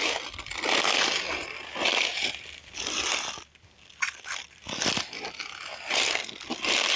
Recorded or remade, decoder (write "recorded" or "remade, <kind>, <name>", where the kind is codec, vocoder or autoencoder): recorded